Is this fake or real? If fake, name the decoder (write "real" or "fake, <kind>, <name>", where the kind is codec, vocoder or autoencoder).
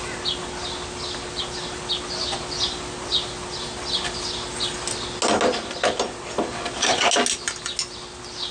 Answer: real